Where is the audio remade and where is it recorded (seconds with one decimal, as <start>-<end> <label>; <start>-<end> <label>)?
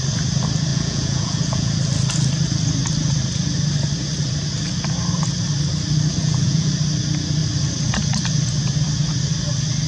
0.0-0.7 recorded; 0.7-1.7 remade; 1.7-6.2 recorded; 6.2-6.7 remade; 6.7-9.9 recorded